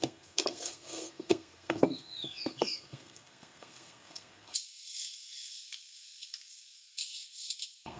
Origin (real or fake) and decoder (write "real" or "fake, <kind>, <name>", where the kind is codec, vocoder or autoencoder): fake, codec, SNAC